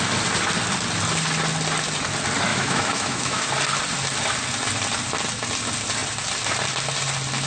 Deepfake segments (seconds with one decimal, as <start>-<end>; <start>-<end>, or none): 2.5-3.5